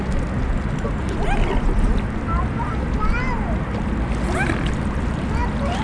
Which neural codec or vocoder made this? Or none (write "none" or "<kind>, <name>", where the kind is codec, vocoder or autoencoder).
none